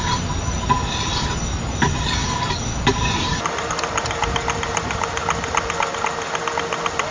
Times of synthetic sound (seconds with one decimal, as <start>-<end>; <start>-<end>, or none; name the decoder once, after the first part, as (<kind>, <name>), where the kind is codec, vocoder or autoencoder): none